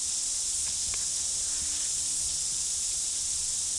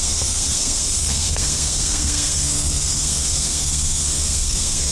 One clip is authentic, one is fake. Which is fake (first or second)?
second